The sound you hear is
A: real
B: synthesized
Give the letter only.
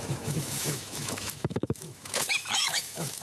B